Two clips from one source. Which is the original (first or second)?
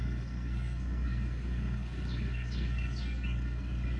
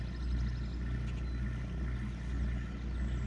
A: second